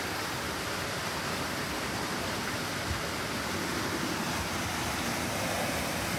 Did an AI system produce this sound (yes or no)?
no